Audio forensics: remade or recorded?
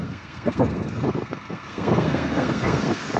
remade